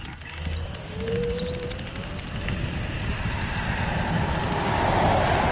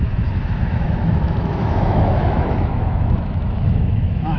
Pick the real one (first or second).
first